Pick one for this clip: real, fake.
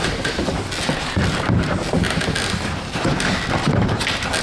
real